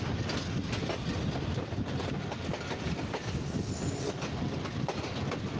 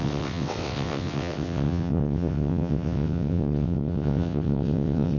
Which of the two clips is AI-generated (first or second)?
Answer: second